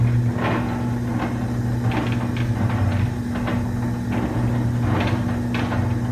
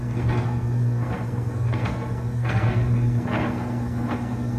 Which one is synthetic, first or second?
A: second